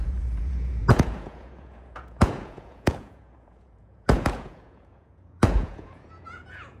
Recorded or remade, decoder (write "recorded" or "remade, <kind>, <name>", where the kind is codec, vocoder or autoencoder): remade, vocoder, Vocos